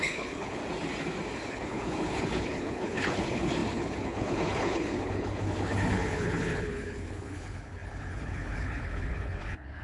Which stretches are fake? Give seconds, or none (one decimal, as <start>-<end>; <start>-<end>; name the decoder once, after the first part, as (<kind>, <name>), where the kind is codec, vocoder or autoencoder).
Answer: 0.0-0.6 (codec, HILCodec); 1.5-9.8